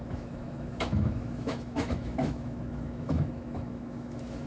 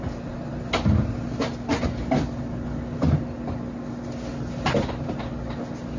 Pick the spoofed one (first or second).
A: first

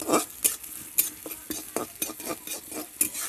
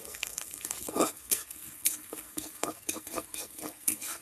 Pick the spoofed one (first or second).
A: second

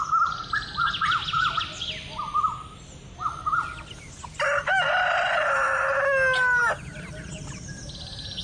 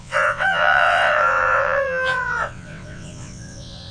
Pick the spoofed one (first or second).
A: second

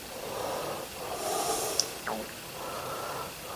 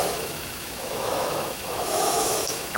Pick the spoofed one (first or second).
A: second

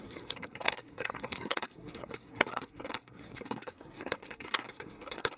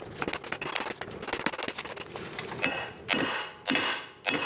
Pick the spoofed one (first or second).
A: first